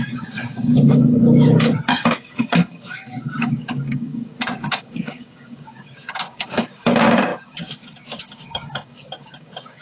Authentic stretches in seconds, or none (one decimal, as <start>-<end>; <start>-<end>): none